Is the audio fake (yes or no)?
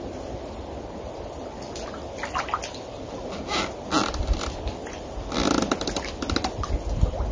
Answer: no